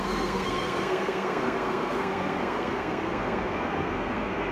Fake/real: fake